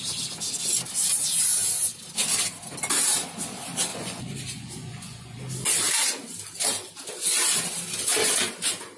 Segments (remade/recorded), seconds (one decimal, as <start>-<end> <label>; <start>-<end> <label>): 0.0-3.9 recorded; 3.9-5.4 remade; 5.4-9.0 recorded